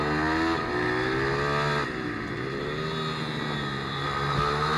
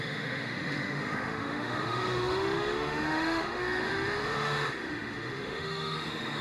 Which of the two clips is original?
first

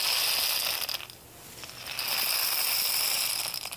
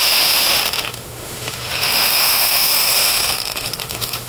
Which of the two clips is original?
first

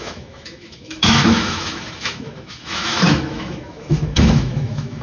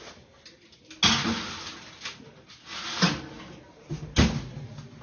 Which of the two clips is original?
second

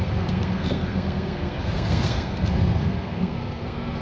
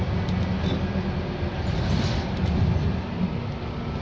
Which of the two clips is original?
second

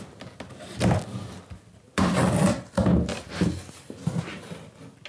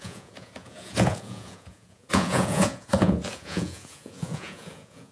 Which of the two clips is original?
first